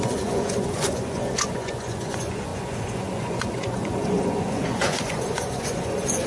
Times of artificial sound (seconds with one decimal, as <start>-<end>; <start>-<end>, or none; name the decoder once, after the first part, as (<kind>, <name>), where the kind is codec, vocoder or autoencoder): 0.0-6.3 (vocoder, Vocos)